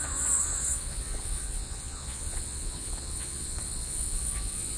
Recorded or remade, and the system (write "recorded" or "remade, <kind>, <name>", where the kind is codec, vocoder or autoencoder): remade, vocoder, Vocos